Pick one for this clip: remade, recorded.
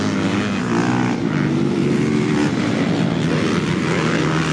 recorded